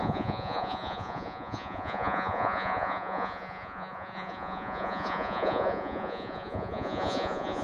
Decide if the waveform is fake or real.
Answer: fake